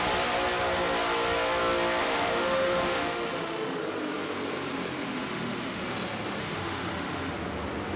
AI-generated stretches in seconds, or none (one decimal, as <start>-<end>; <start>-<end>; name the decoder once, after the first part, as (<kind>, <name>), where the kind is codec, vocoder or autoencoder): 2.0-3.8 (autoencoder, DAC-VAE); 5.0-5.8; 6.4-7.3